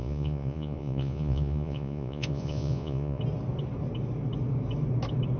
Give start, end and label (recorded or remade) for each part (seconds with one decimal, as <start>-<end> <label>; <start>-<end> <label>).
0.0-3.2 remade; 3.2-5.4 recorded